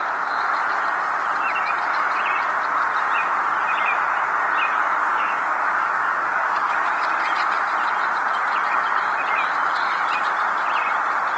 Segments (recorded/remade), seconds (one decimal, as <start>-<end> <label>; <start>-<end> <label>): 0.0-5.0 recorded; 5.0-6.7 remade; 6.7-11.4 recorded